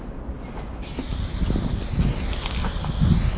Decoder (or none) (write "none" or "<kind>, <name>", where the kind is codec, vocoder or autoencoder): none